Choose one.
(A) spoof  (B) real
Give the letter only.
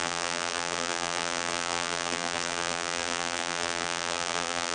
A